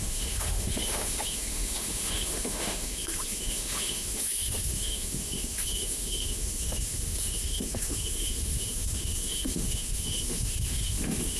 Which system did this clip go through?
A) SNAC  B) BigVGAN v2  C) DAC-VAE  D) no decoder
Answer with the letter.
C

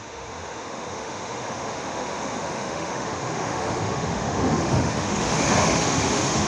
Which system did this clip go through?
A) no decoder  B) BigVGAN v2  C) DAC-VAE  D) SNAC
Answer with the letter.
C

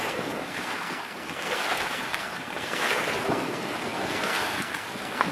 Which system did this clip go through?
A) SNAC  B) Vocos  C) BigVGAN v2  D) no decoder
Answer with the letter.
A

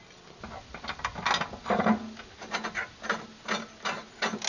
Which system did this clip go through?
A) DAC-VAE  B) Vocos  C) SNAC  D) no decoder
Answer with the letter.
D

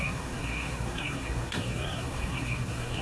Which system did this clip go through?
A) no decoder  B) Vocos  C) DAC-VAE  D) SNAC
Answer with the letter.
D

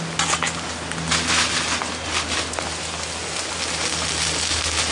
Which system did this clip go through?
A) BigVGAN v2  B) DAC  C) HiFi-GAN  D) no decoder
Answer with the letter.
D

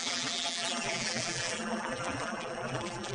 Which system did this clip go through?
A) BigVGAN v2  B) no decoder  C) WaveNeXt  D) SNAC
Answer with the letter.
A